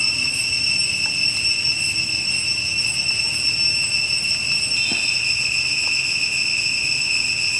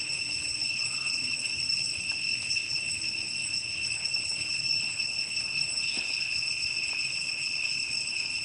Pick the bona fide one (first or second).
first